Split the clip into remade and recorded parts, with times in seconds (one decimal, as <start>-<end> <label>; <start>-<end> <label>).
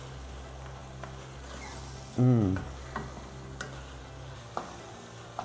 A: 0.0-5.4 recorded